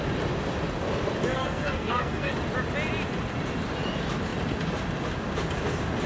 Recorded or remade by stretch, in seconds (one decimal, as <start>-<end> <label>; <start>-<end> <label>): 0.0-1.3 recorded; 1.3-2.3 remade; 2.3-6.1 recorded